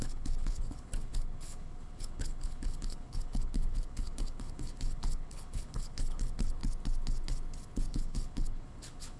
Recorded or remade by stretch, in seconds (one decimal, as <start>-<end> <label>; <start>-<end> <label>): 0.0-6.6 remade; 6.6-7.9 recorded; 7.9-9.2 remade